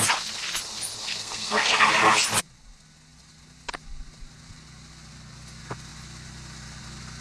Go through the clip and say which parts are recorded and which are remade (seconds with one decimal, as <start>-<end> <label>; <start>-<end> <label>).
0.0-1.2 recorded; 1.2-1.9 remade; 1.9-7.2 recorded